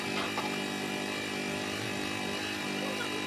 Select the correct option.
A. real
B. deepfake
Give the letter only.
A